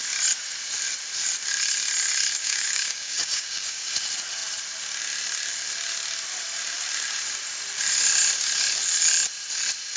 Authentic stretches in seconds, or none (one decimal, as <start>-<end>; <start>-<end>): 0.0-2.4; 4.0-10.0